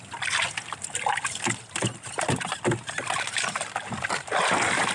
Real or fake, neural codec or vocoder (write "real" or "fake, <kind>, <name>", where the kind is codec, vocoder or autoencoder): real